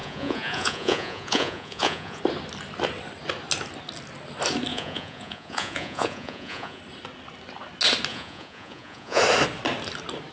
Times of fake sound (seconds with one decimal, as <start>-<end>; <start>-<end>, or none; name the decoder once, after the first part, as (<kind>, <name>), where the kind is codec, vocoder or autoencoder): 0.0-2.2 (vocoder, Vocos); 4.7-6.8; 8.1-9.2